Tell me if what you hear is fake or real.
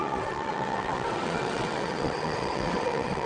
fake